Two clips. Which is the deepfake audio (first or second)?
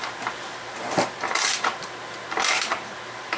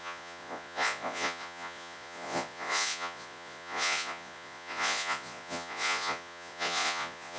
second